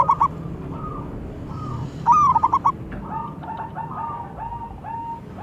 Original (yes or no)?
yes